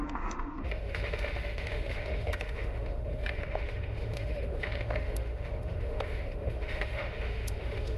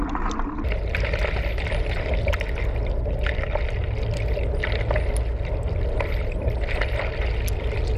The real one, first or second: second